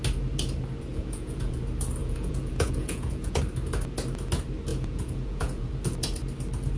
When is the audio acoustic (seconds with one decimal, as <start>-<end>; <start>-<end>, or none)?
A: 0.0-0.9; 1.6-2.0; 3.4-4.7; 5.7-6.8

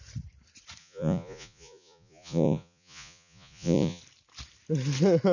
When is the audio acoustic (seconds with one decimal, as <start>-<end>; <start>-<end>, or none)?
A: 0.0-0.8; 4.0-5.3

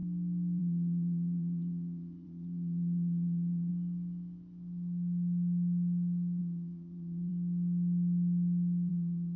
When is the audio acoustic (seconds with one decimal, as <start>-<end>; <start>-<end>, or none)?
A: 0.0-0.6; 3.7-6.4; 7.3-8.9

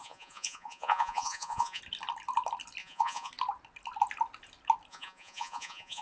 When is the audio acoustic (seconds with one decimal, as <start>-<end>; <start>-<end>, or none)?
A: 1.8-2.8; 3.3-4.9

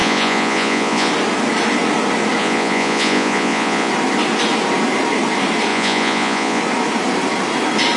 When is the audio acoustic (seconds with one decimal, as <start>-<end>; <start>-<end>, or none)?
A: 1.1-2.4; 3.9-5.7; 6.6-8.0